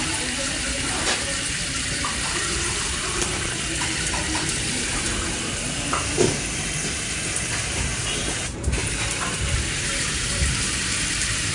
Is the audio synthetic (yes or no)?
yes